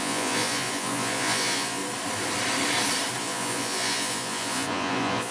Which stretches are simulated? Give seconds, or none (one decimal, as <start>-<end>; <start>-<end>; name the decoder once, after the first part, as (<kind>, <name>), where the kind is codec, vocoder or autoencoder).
0.0-1.8 (vocoder, Vocos); 3.2-5.3